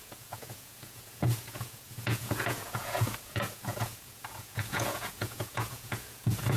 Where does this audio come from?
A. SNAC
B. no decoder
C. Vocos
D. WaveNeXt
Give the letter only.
C